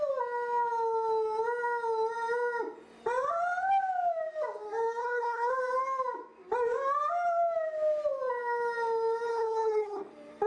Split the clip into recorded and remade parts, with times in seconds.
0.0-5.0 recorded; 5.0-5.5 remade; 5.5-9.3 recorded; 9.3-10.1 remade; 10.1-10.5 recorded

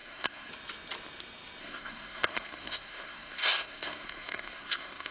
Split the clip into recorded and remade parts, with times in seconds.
0.0-0.5 remade; 0.5-1.6 recorded; 1.6-5.1 remade

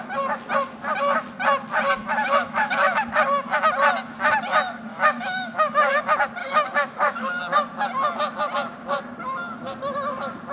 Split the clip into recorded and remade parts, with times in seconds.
0.0-2.0 recorded; 2.0-3.1 remade; 3.1-4.9 recorded; 4.9-6.0 remade; 6.0-6.4 recorded; 6.4-7.4 remade; 7.4-10.5 recorded

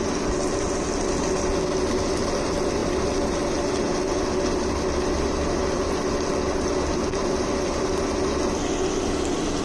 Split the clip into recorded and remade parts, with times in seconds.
0.0-9.6 recorded

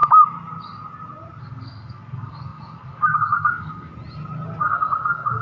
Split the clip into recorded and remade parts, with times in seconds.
0.0-1.4 recorded; 1.4-3.9 remade; 3.9-4.6 recorded; 4.6-5.4 remade

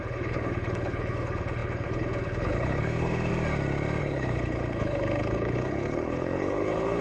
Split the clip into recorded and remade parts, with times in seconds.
0.0-3.3 remade; 3.3-4.0 recorded; 4.0-7.0 remade

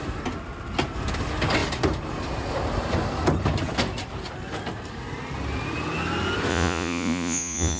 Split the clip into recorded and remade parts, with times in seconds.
0.0-6.5 recorded; 6.5-7.8 remade